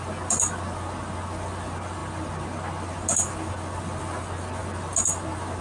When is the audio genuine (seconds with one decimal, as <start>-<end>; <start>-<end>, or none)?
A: 0.0-5.6